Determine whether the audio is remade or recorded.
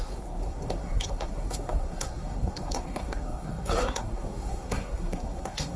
remade